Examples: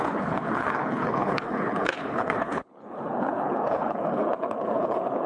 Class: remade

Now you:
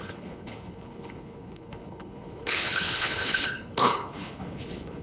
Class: remade